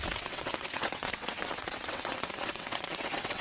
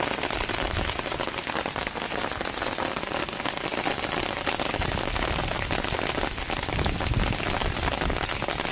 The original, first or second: second